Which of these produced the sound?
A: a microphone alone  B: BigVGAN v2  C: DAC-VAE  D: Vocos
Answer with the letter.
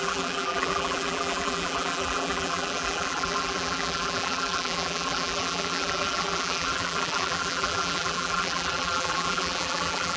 B